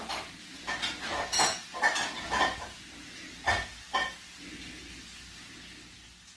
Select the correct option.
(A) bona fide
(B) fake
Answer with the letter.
A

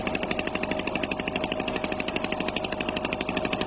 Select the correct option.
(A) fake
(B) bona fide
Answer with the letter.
B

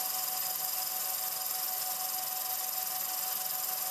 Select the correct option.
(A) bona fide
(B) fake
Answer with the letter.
A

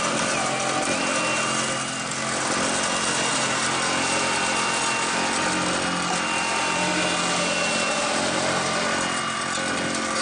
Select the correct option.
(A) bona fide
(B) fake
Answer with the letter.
A